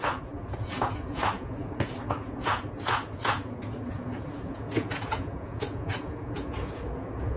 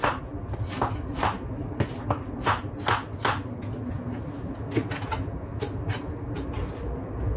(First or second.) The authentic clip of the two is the second